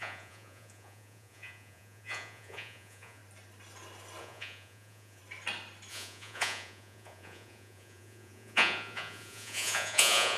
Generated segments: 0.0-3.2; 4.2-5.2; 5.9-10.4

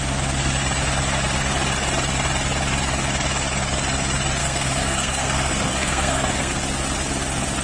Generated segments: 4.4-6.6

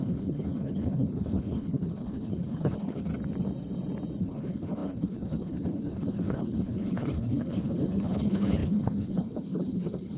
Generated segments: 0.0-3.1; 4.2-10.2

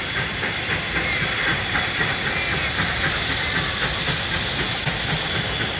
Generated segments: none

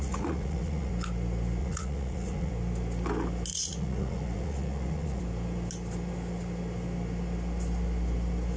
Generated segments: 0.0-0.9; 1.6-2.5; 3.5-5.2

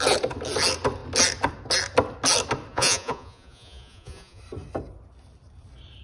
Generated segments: 2.7-4.4